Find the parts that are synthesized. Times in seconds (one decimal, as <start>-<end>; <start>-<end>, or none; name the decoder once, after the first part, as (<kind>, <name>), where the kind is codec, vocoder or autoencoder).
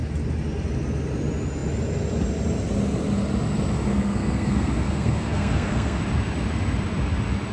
3.9-6.0 (codec, SNAC)